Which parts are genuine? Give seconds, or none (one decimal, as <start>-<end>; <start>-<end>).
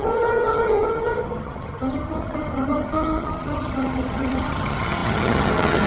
none